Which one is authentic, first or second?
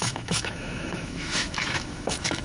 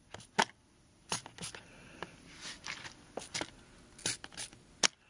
second